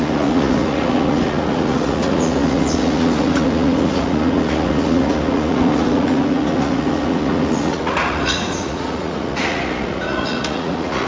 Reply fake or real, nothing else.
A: fake